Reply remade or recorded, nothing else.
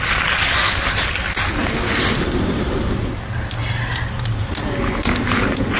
recorded